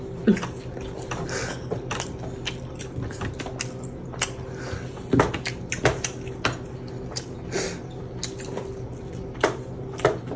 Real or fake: real